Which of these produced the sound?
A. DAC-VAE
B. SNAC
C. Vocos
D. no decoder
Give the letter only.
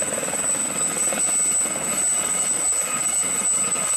D